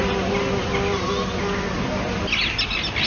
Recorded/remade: recorded